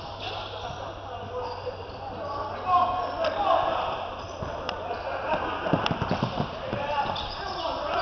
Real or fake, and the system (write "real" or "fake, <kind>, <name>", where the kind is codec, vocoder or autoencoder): real